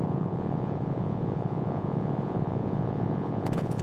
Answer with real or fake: fake